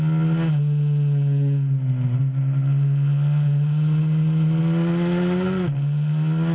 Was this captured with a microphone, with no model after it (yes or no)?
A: yes